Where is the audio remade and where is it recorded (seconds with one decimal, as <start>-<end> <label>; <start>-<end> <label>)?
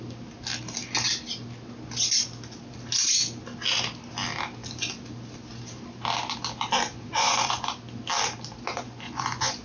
0.0-6.9 recorded; 6.9-7.7 remade; 7.7-8.7 recorded; 8.7-9.6 remade